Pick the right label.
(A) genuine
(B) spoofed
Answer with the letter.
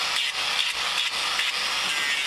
A